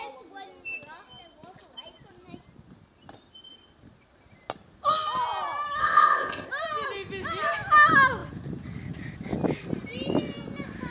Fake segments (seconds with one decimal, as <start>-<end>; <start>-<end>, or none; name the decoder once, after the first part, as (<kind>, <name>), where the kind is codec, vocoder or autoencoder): 5.8-6.5 (codec, ZipCodec)